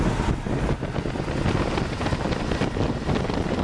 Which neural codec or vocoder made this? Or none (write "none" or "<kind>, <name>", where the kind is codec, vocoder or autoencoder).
none